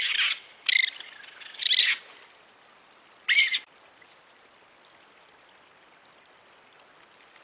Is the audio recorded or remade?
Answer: recorded